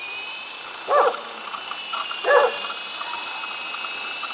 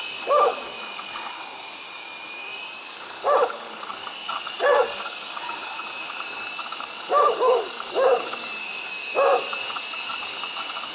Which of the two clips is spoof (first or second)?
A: second